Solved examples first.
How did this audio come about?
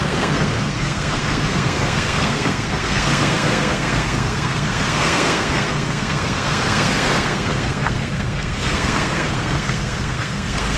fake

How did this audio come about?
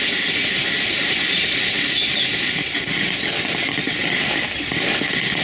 real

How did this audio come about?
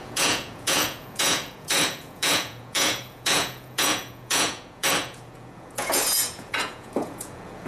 fake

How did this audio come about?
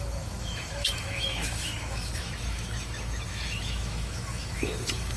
fake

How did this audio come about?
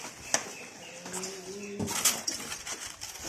real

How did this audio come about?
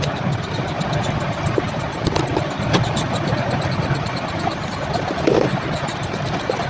fake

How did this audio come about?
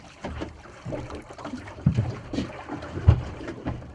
fake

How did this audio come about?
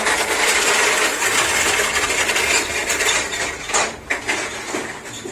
real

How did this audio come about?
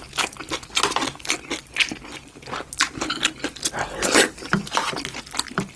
real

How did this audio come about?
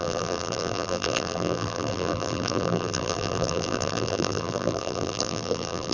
fake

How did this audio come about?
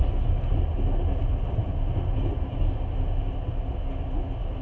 real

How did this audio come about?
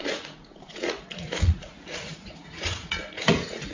fake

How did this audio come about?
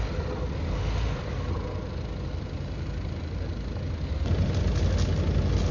real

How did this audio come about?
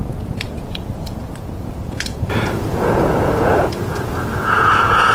fake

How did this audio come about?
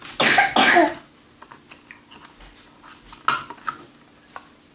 real